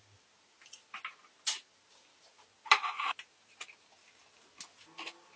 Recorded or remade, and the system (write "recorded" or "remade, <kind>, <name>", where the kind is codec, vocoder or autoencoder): recorded